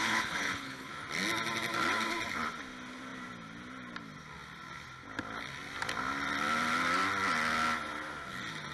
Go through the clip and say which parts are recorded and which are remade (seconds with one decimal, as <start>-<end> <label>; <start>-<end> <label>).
0.0-0.9 remade; 0.9-8.7 recorded